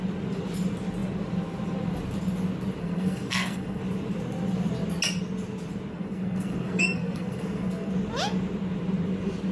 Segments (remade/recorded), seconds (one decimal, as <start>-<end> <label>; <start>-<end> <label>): 0.0-2.8 recorded; 2.8-3.8 remade; 3.8-5.9 recorded; 5.9-7.9 remade; 7.9-9.5 recorded